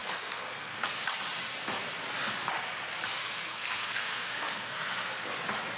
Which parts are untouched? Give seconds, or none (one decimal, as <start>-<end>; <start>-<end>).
0.9-3.2; 5.1-5.8